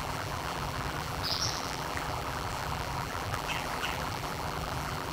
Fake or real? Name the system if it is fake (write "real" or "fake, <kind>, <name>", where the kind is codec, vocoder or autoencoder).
fake, vocoder, BigVGAN v2